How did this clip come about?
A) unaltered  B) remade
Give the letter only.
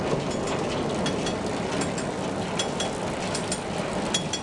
A